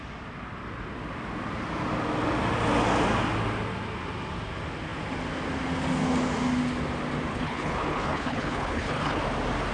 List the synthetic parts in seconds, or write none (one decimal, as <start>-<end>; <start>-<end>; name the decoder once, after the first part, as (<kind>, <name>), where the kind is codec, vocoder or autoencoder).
7.3-9.2 (codec, HILCodec)